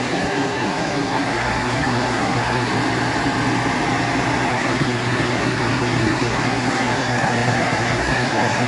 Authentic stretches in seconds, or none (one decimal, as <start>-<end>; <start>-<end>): 2.7-4.5